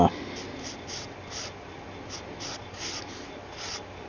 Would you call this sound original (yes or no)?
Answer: yes